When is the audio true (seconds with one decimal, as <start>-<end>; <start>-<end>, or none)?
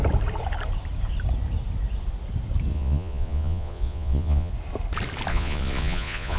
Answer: 0.0-2.7; 4.5-5.3